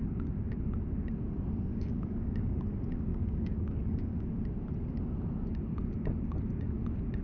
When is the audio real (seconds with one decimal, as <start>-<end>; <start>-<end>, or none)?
0.0-1.7; 2.6-3.1; 4.2-7.2

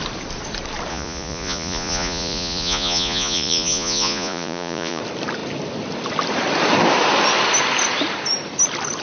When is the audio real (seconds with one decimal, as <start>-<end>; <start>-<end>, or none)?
0.0-0.9; 5.0-9.0